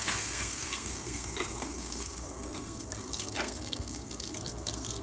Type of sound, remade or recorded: remade